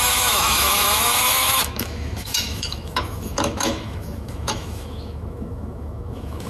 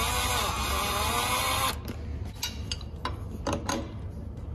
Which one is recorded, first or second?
second